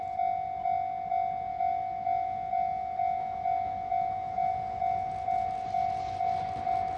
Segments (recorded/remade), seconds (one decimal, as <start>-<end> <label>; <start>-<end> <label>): 0.0-1.5 recorded; 1.5-4.5 remade; 4.5-7.0 recorded